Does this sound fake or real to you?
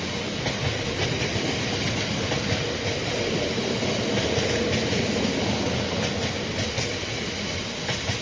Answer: real